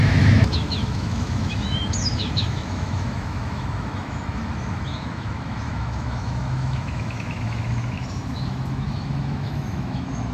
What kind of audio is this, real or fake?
fake